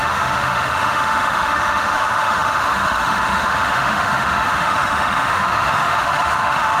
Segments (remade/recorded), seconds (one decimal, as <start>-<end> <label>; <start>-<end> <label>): 0.0-6.8 remade